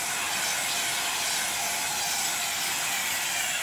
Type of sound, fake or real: real